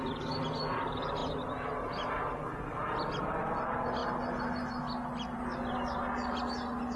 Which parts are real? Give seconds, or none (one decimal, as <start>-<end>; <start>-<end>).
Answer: 0.0-7.0